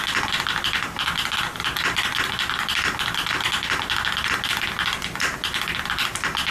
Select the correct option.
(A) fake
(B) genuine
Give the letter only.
B